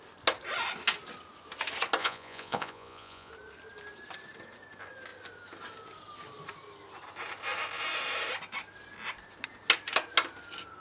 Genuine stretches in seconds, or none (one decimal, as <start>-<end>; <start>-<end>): 0.0-2.0; 3.3-10.8